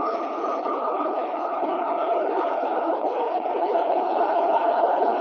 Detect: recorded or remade remade